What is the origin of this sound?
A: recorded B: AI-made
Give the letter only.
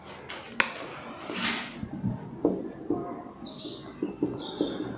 A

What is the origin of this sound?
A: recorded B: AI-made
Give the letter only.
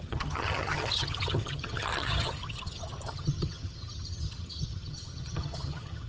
B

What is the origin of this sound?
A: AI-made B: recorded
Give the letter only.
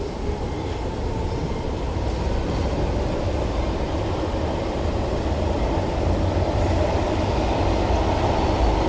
B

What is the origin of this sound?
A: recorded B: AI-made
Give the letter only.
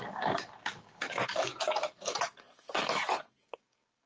B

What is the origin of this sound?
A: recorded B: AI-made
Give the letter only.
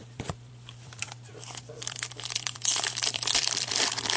B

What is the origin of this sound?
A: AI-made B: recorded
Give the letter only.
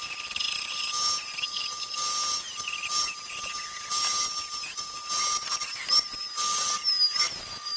B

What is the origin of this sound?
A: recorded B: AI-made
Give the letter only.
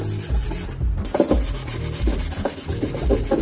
A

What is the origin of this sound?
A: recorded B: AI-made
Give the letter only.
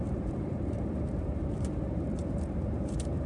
B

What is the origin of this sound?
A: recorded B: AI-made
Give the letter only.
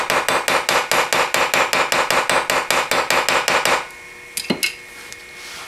A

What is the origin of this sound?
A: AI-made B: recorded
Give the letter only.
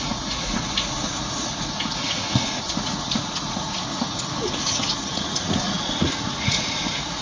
A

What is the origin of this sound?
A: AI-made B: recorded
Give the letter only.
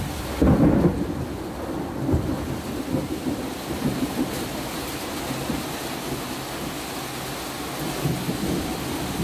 B